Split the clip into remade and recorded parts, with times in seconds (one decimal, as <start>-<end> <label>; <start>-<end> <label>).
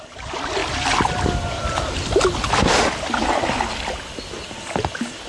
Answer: 0.0-5.3 recorded